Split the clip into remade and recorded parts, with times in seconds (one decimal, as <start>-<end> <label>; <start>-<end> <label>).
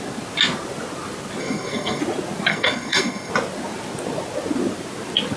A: 0.0-1.4 recorded; 1.4-2.0 remade; 2.0-2.5 recorded; 2.5-3.3 remade; 3.3-5.4 recorded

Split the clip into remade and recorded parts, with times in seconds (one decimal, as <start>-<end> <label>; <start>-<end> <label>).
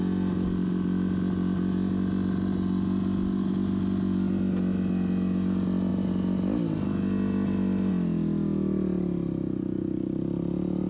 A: 0.0-10.9 recorded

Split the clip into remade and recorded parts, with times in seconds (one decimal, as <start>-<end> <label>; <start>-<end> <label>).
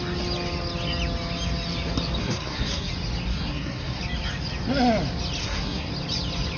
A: 0.0-2.2 recorded; 2.2-2.9 remade; 2.9-3.3 recorded; 3.3-4.0 remade; 4.0-5.4 recorded; 5.4-5.9 remade; 5.9-6.6 recorded